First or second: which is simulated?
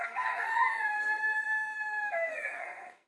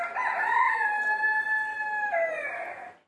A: first